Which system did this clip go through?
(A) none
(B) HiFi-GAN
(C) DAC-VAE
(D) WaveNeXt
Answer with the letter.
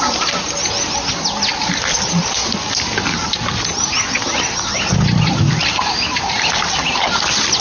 A